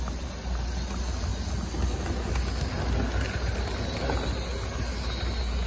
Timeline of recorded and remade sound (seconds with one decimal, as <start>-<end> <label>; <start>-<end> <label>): 0.0-5.7 recorded